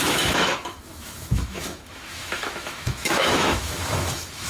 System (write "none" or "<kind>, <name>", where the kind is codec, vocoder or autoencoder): autoencoder, DAC-VAE